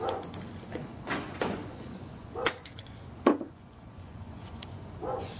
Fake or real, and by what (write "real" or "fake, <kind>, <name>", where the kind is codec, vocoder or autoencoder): fake, vocoder, Vocos